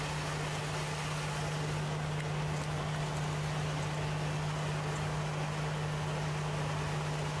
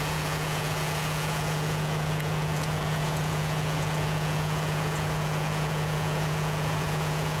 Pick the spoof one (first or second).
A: second